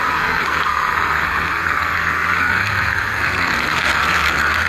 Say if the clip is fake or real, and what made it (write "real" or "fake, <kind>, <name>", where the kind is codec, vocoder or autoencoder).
fake, codec, SNAC